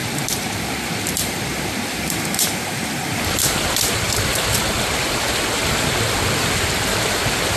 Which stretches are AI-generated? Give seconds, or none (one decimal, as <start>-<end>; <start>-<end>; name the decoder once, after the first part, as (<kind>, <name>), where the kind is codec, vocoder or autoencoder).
0.0-4.6 (vocoder, BigVGAN v2)